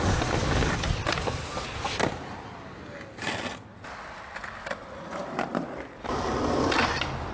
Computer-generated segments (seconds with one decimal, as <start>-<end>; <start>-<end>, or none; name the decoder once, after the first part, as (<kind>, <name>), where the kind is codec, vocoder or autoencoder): none